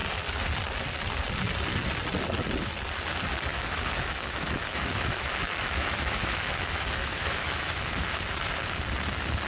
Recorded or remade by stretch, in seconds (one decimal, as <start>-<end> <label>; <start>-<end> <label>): 0.0-3.5 recorded; 3.5-8.2 remade; 8.2-9.5 recorded